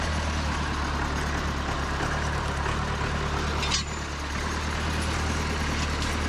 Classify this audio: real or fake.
real